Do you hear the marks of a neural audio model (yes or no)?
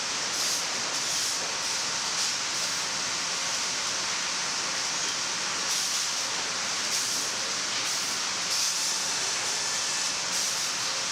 no